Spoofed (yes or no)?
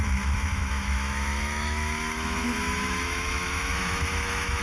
yes